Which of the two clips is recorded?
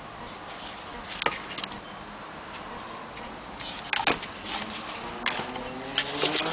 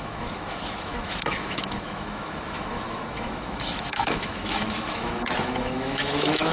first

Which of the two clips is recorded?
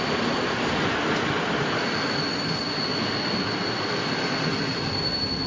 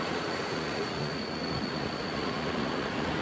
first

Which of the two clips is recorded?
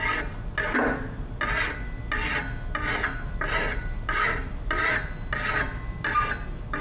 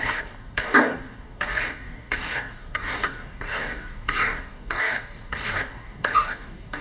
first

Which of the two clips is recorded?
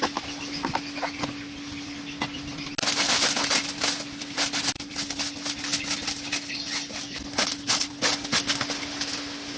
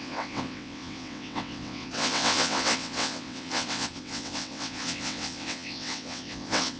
first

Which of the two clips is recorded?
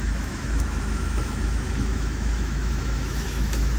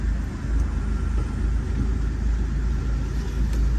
second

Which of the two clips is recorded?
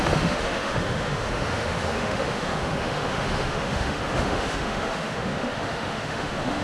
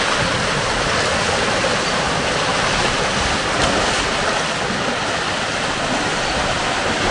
second